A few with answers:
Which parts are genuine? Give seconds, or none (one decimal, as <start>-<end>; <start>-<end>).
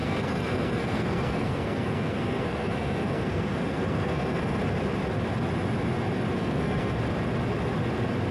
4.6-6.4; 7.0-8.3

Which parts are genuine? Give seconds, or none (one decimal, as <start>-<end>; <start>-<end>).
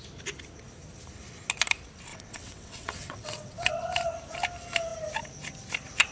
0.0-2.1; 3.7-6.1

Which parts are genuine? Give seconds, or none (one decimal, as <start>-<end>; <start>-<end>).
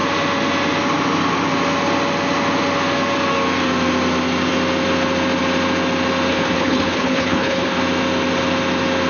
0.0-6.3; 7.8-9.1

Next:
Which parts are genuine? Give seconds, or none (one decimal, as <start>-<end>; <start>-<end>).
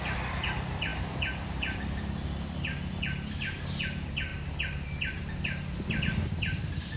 0.0-7.0